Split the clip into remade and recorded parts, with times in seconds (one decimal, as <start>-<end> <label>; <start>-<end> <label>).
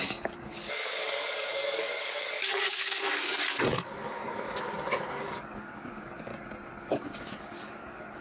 0.0-6.3 remade; 6.3-6.8 recorded; 6.8-8.2 remade